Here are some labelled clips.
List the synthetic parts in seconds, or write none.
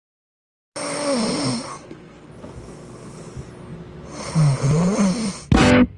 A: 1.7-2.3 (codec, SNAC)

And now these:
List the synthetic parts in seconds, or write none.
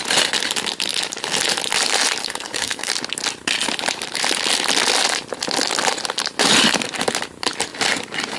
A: 2.2-2.9 (codec, SNAC)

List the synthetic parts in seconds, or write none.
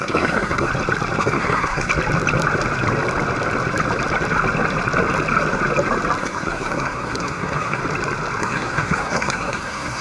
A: 0.0-0.7 (codec, SNAC); 1.2-1.9; 6.2-7.8; 8.4-10.0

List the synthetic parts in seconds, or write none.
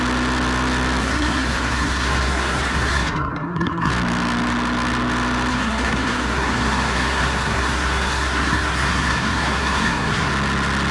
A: 1.0-3.9 (codec, SNAC); 5.5-10.3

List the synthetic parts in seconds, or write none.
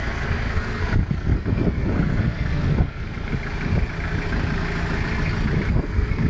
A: 0.0-3.3 (codec, SNAC); 5.7-6.3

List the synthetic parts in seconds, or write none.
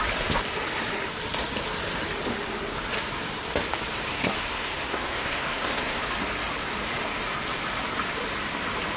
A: 4.1-6.0 (codec, SNAC)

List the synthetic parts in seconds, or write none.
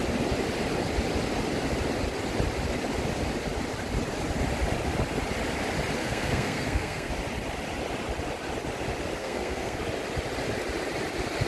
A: 6.0-7.1 (codec, SNAC); 9.2-9.8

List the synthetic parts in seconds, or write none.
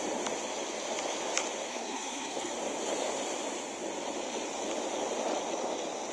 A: 1.7-2.5 (codec, SNAC)